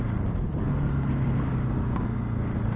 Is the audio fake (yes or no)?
no